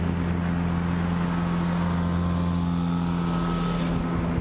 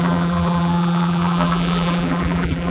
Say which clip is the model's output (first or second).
second